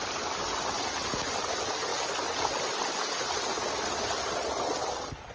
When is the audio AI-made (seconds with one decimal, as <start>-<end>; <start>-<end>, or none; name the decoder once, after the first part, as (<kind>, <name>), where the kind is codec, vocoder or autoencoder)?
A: none